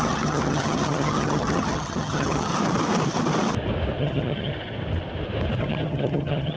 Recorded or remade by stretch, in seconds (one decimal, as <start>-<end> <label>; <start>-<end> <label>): 0.0-2.5 remade; 2.5-4.0 recorded; 4.0-4.5 remade; 4.5-5.6 recorded; 5.6-6.6 remade